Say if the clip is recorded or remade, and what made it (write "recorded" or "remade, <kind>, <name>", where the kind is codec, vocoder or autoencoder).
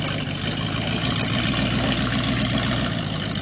recorded